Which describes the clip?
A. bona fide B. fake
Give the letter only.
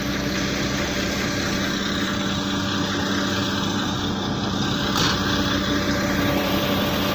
A